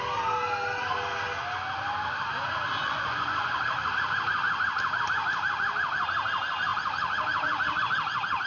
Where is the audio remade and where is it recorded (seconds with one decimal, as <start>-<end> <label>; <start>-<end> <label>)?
0.0-2.8 recorded; 2.8-3.6 remade; 3.6-8.5 recorded